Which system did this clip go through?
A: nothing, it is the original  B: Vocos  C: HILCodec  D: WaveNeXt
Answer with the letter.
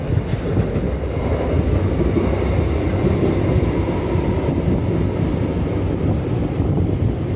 A